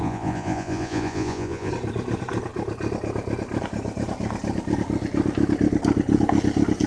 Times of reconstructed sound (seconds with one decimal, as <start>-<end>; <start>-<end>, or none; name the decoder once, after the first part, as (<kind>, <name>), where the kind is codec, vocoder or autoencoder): 0.0-1.7 (vocoder, Vocos)